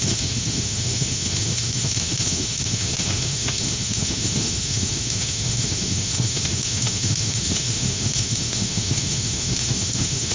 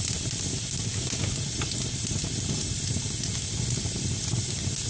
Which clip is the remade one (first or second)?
first